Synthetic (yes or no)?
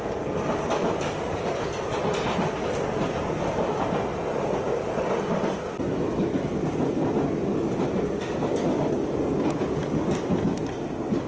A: no